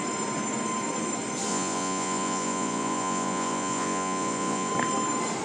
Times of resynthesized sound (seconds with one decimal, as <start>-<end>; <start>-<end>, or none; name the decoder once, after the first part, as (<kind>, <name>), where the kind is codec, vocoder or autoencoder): 1.5-4.7 (vocoder, Vocos)